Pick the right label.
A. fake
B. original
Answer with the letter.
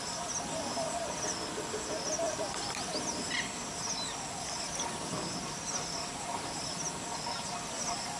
B